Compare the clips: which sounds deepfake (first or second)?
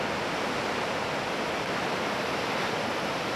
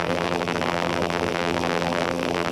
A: second